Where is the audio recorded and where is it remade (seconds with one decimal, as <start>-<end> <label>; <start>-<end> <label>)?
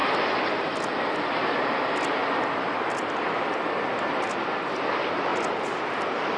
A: 0.0-6.4 recorded